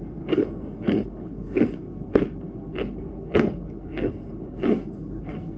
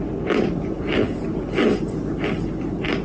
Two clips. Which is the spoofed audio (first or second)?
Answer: first